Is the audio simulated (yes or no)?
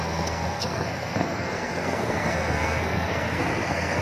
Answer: yes